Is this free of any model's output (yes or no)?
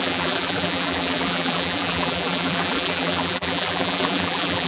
no